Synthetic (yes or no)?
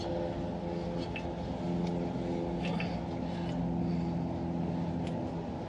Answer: no